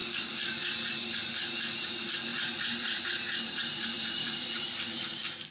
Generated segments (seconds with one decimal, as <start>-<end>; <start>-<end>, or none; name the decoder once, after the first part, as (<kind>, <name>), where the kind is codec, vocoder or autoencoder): 2.3-3.0 (vocoder, BigVGAN v2); 3.6-4.8